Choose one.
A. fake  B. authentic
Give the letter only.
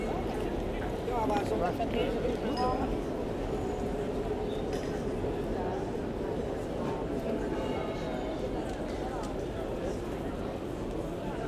B